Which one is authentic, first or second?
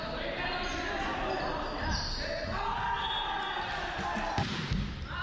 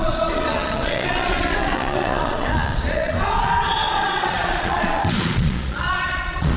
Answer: first